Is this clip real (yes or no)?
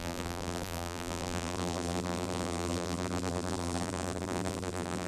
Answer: no